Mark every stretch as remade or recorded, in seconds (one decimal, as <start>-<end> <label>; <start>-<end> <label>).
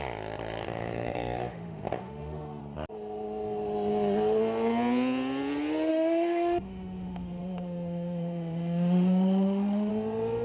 0.0-0.6 recorded; 0.6-2.6 remade; 2.6-5.9 recorded; 5.9-9.9 remade; 9.9-10.4 recorded